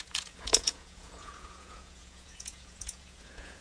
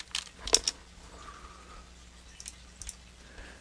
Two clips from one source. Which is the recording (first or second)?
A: second